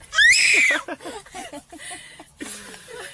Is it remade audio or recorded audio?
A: recorded